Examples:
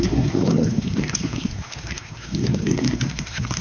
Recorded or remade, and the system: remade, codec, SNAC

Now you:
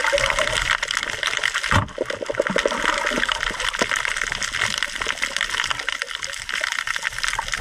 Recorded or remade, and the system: recorded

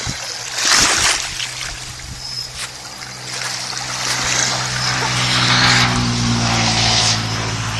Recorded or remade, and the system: recorded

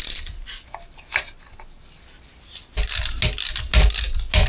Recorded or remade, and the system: recorded